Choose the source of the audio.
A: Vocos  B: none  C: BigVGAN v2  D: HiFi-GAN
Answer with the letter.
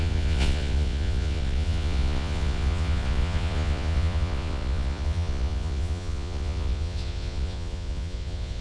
A